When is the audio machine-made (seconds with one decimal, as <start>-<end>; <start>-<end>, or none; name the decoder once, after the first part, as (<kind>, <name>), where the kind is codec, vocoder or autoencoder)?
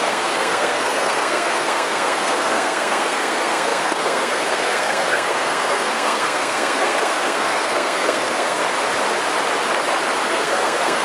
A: 0.0-8.6 (codec, SNAC); 10.3-11.0